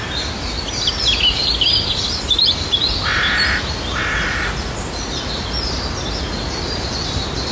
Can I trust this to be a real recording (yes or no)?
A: yes